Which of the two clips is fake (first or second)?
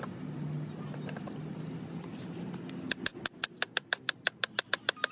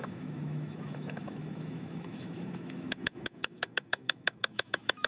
second